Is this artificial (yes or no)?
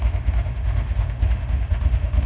yes